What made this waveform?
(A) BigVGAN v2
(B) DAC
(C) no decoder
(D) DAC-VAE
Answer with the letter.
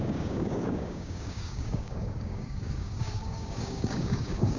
B